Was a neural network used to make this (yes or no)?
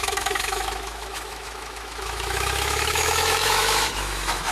yes